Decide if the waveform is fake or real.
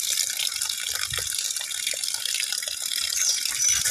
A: real